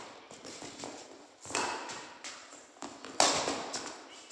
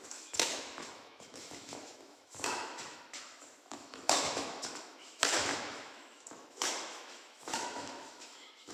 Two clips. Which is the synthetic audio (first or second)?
second